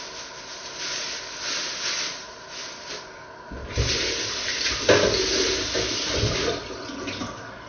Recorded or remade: recorded